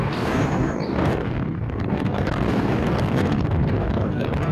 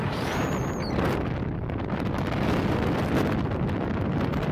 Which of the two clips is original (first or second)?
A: second